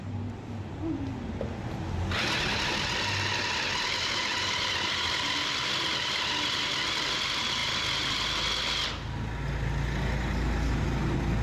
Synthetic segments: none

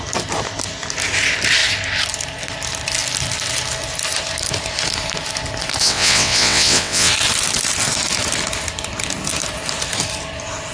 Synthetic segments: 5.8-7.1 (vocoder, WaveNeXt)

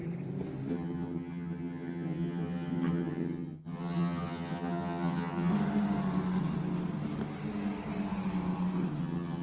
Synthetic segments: 0.7-5.5 (vocoder, HiFi-GAN); 9.0-9.4

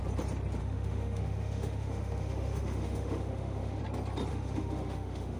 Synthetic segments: 0.6-3.8 (autoencoder, DAC-VAE); 4.3-5.4

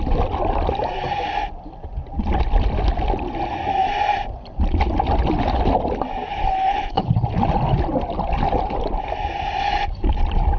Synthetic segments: 6.3-7.1 (codec, HILCodec)

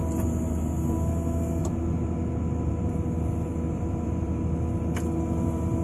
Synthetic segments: 3.5-4.7 (vocoder, BigVGAN v2)

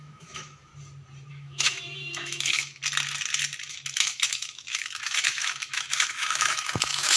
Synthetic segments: 0.0-0.7 (autoencoder, DAC-VAE); 1.3-2.8; 3.7-7.2